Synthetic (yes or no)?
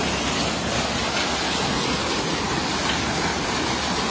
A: no